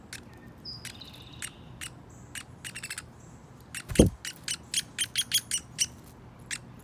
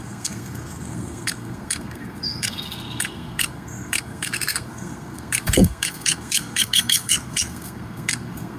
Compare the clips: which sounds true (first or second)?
first